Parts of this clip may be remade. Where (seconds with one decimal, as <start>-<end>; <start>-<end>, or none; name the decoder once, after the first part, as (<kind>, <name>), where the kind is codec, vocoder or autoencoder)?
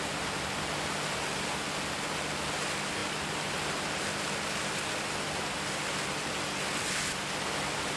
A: none